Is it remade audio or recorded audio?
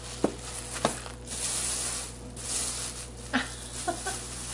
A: recorded